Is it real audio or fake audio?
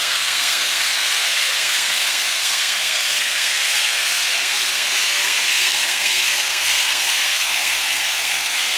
fake